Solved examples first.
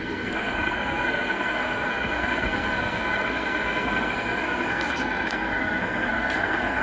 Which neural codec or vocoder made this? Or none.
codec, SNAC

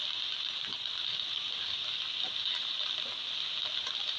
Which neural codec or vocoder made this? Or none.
none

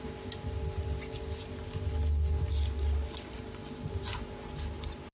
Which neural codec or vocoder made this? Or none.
none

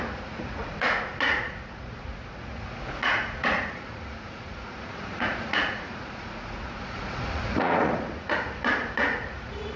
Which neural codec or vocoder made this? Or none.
vocoder, Vocos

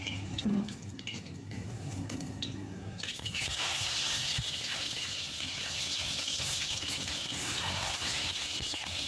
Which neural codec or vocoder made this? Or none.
codec, SNAC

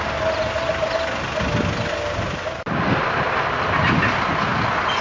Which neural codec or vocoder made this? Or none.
none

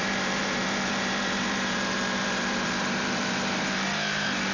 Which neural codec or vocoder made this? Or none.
vocoder, BigVGAN v2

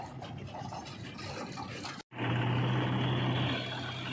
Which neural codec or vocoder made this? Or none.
none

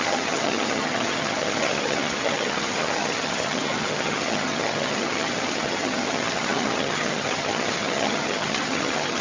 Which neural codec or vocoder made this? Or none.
vocoder, HiFi-GAN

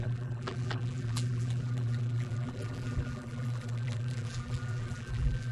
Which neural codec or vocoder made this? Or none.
vocoder, BigVGAN v2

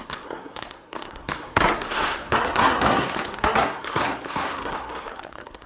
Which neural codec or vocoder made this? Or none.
codec, SNAC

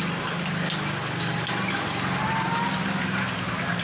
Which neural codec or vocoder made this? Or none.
none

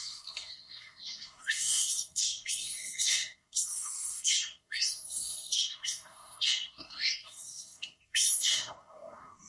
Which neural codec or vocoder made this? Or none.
codec, SNAC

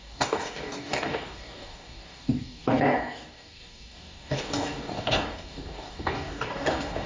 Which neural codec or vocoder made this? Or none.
codec, DAC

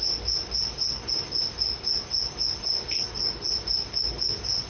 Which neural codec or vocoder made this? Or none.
none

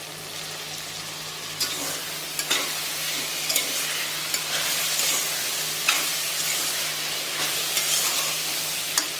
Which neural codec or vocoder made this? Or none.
none